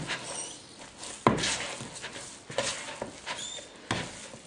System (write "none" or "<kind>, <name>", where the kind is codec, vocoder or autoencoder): none